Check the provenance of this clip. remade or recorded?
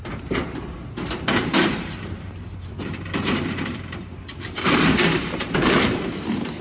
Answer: remade